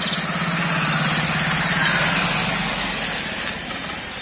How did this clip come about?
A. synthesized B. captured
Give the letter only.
B